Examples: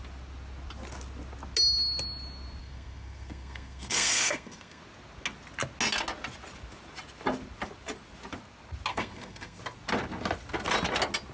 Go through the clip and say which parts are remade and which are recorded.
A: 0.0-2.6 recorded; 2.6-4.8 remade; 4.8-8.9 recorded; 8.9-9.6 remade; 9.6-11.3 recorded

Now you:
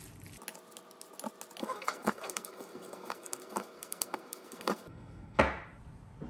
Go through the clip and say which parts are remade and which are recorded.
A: 0.0-1.6 recorded; 1.6-5.4 remade; 5.4-6.3 recorded